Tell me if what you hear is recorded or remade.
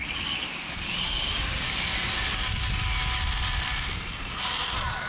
recorded